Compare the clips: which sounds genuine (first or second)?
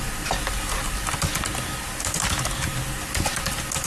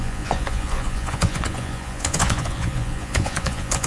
first